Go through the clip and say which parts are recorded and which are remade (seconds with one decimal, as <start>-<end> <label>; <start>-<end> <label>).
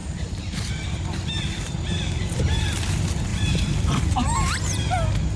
0.0-1.5 remade; 1.5-5.4 recorded